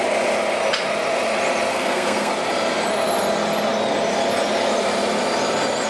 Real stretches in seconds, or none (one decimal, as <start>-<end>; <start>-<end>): 0.0-1.7; 2.3-5.9